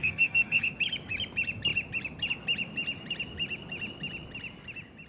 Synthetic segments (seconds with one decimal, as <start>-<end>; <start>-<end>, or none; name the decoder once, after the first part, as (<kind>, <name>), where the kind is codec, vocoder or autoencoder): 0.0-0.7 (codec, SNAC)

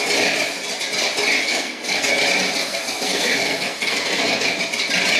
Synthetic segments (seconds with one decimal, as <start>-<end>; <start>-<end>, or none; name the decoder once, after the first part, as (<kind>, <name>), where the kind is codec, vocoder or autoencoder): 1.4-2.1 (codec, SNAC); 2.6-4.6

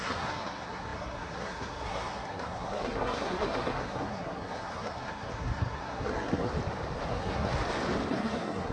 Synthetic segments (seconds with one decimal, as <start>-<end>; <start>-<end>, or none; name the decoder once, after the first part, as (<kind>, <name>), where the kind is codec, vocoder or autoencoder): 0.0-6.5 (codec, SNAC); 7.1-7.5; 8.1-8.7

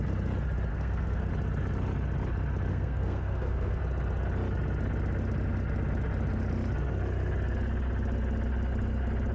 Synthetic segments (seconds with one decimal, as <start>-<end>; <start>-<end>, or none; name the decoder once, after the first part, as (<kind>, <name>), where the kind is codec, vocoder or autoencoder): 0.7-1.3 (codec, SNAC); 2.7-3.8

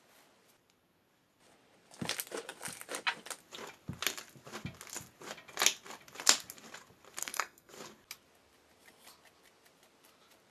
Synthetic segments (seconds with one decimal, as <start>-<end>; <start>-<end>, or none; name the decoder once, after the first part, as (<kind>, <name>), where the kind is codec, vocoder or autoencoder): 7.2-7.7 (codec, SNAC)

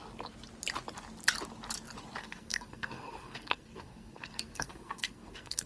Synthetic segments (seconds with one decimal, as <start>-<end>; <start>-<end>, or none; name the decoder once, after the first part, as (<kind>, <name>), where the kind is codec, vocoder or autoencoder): 2.2-5.7 (codec, SNAC)